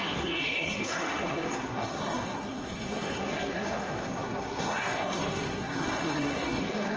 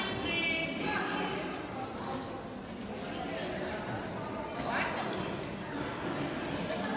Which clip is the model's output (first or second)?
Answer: first